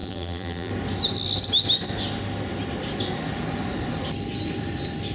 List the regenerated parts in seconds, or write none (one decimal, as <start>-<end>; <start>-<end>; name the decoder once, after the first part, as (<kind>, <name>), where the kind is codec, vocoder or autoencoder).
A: 0.0-0.7 (vocoder, BigVGAN v2)